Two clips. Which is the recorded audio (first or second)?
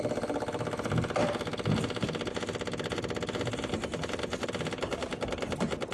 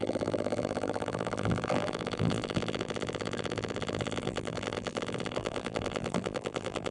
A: first